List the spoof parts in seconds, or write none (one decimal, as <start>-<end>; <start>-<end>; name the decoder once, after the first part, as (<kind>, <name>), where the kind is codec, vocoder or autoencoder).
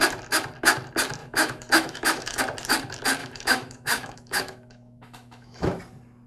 1.2-2.4 (autoencoder, DAC-VAE); 3.2-5.8